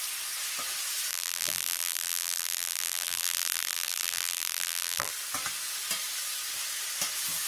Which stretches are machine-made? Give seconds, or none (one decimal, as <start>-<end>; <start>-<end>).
1.1-5.1